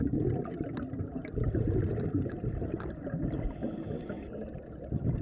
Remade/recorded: recorded